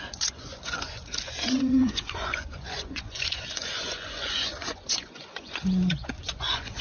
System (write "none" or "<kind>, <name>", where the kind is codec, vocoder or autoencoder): vocoder, Vocos